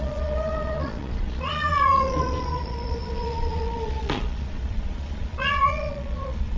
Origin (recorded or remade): remade